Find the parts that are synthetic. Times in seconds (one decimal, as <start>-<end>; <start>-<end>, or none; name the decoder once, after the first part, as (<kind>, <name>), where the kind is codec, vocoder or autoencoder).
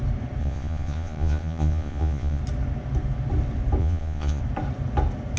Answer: 0.4-2.4 (vocoder, Vocos); 3.8-4.4